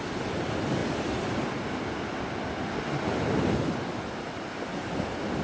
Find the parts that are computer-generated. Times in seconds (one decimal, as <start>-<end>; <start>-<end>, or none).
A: 0.8-4.0

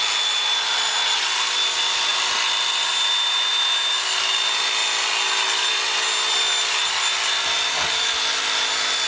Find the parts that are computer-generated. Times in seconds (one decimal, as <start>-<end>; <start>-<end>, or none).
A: none